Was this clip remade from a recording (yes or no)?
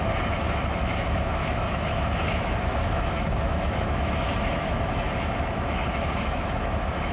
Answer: yes